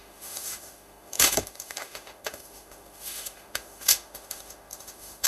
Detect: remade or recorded remade